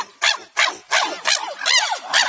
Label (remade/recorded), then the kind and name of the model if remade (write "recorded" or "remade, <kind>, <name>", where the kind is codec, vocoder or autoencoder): recorded